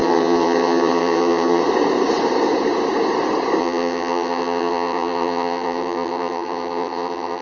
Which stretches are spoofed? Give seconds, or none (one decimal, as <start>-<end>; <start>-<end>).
0.0-1.6; 3.6-7.4